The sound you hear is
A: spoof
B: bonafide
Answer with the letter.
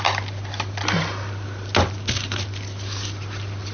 B